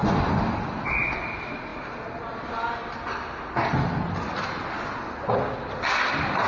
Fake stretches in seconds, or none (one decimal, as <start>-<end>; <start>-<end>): 0.0-1.7; 5.6-6.5